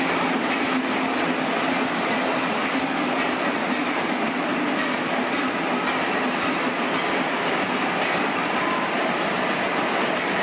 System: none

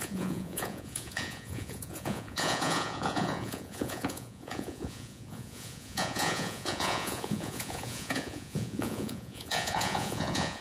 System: vocoder, Vocos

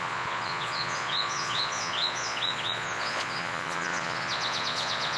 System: vocoder, Vocos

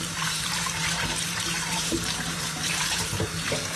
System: vocoder, BigVGAN v2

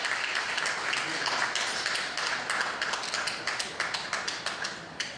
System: none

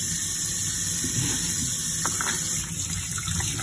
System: none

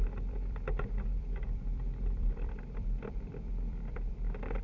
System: vocoder, BigVGAN v2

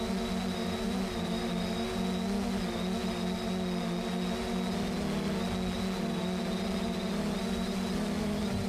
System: none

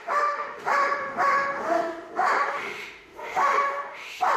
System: autoencoder, DAC-VAE